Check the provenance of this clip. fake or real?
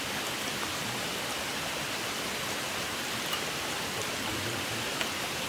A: fake